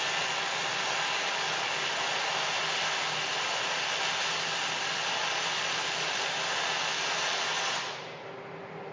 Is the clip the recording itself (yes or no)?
yes